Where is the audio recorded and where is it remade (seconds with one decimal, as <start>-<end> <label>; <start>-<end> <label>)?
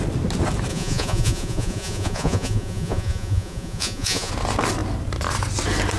0.0-0.7 recorded; 0.7-4.3 remade; 4.3-6.0 recorded